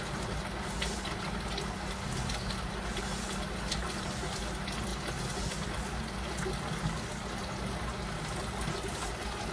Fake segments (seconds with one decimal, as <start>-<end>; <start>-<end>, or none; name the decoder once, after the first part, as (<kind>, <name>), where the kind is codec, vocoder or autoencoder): none